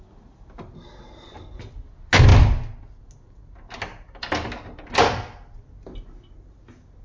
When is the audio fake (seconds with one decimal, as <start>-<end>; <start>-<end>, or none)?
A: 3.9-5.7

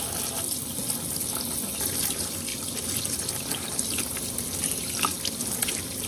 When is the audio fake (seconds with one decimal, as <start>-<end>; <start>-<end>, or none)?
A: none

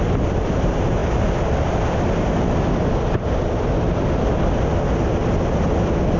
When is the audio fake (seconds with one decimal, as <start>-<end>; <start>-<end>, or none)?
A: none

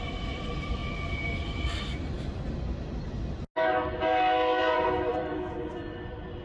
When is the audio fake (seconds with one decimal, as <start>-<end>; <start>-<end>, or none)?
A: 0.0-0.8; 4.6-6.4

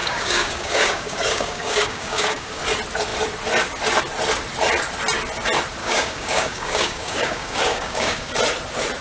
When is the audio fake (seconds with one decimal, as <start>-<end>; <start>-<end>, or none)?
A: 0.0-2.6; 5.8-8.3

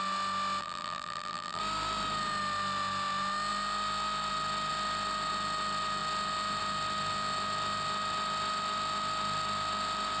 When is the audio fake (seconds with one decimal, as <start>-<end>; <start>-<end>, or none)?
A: 0.6-1.6